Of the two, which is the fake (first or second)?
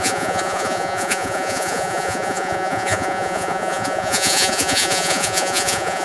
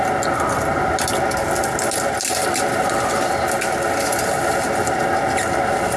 first